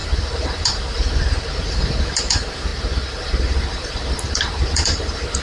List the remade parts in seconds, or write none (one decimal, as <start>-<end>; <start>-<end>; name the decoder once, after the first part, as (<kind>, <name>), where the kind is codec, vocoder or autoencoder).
0.0-2.7 (vocoder, BigVGAN v2); 3.2-5.4